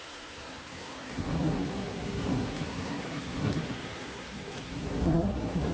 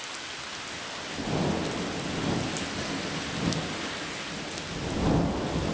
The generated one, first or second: first